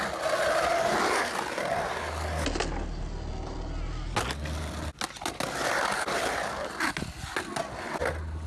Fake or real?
real